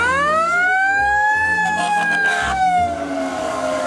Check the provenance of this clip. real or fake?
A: fake